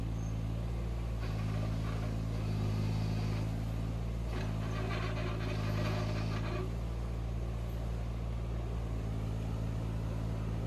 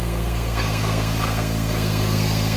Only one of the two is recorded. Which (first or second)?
first